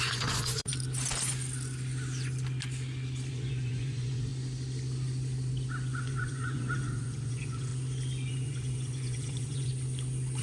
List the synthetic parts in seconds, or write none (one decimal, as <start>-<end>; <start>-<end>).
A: 0.0-0.7; 3.3-4.3; 6.0-7.7; 8.3-9.7